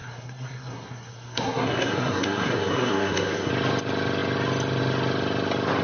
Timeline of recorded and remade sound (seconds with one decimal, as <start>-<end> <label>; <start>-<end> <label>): 0.0-3.5 remade; 3.5-5.8 recorded